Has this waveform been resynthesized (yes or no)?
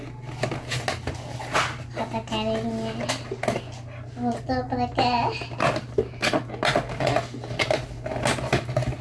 no